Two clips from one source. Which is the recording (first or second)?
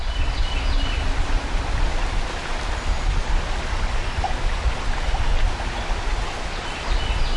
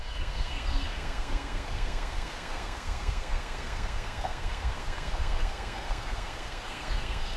first